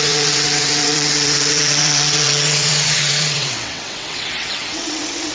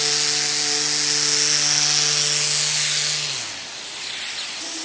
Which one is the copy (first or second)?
first